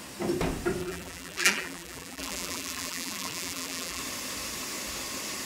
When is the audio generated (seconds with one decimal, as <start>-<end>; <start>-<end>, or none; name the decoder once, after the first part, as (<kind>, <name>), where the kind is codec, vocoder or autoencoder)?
0.8-4.0 (vocoder, BigVGAN v2)